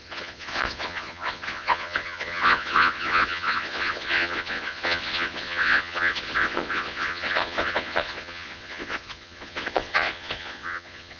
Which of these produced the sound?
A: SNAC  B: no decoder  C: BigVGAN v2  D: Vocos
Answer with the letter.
D